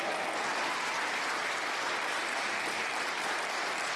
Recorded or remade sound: recorded